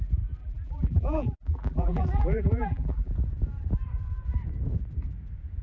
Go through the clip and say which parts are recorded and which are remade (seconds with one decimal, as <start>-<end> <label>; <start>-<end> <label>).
0.0-0.4 recorded; 0.4-3.1 remade; 3.1-5.6 recorded